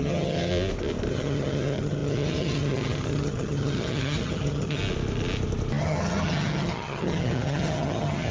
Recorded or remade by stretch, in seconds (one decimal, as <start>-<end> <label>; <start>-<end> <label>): 0.0-0.5 remade; 0.5-1.1 recorded; 1.1-4.8 remade; 4.8-5.8 recorded; 5.8-8.3 remade